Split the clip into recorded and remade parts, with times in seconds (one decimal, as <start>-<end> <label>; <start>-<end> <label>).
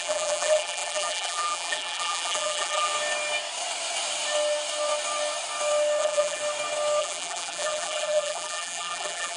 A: 0.0-2.9 remade; 2.9-6.0 recorded; 6.0-6.4 remade; 6.4-7.0 recorded; 7.0-9.4 remade